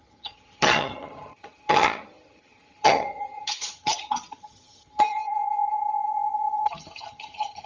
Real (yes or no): no